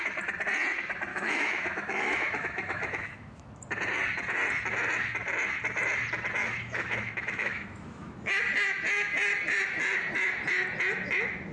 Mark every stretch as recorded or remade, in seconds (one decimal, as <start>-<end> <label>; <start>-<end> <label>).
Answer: 0.0-1.1 recorded; 1.1-3.6 remade; 3.6-6.4 recorded; 6.4-8.3 remade; 8.3-11.5 recorded

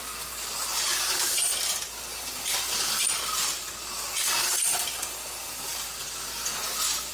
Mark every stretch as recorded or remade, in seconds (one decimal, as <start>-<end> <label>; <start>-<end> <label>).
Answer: 0.0-7.1 recorded

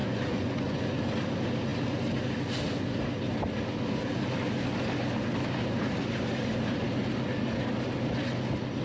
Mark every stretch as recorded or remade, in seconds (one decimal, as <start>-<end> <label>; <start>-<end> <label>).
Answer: 0.0-1.0 remade; 1.0-8.8 recorded

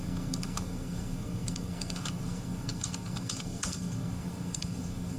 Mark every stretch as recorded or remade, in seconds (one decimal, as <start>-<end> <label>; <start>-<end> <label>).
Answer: 0.0-5.2 remade

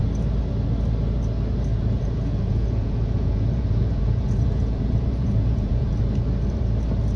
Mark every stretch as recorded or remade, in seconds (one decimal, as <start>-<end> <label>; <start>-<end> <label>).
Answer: 0.0-1.7 recorded; 1.7-6.0 remade; 6.0-7.2 recorded

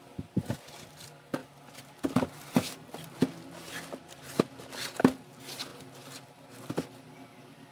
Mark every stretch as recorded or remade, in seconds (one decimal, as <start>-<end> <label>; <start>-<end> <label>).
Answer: 0.0-7.7 remade

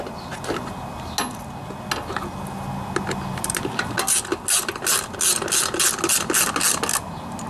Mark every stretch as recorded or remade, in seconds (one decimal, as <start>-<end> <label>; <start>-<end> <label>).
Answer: 0.0-7.5 recorded